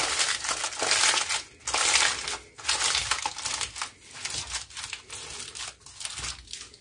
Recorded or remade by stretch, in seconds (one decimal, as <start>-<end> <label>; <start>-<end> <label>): 0.0-6.8 recorded